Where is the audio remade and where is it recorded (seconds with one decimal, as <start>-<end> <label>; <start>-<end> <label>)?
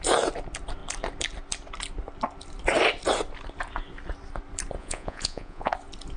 0.0-4.8 recorded; 4.8-5.7 remade; 5.7-6.2 recorded